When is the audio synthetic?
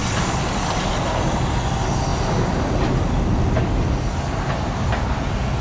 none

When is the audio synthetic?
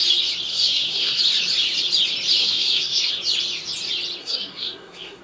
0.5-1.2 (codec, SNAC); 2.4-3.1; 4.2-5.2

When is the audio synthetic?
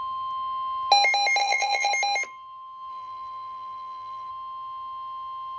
1.4-1.9 (vocoder, BigVGAN v2); 2.9-4.3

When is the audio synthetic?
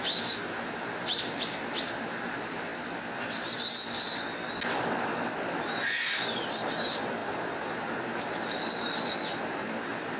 0.0-2.7 (vocoder, BigVGAN v2); 6.3-10.2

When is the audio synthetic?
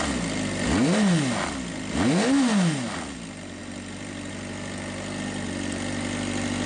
none